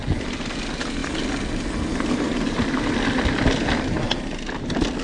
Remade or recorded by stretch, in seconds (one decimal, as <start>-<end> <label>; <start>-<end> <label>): 0.0-5.0 recorded